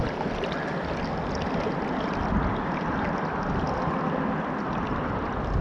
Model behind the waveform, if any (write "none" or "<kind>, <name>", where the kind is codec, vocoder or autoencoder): none